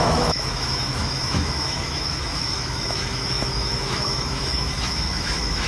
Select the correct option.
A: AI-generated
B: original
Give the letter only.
A